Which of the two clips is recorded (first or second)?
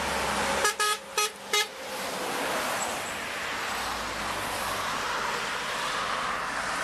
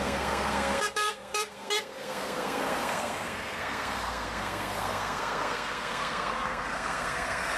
first